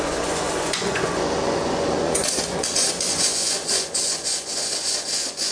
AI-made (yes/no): yes